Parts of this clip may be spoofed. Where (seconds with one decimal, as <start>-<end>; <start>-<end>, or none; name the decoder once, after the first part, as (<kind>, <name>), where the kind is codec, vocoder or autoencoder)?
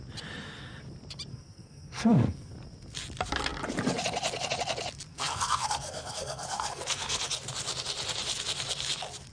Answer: 1.3-2.5 (codec, SNAC); 5.1-7.2